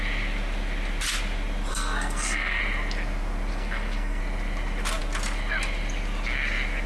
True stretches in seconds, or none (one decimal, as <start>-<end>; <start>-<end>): 0.0-1.7; 2.6-3.5; 4.2-6.9